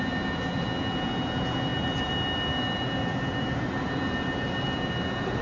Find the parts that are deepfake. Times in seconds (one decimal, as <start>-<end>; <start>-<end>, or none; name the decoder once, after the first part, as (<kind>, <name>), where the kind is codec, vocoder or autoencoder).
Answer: 1.7-4.9 (vocoder, BigVGAN v2)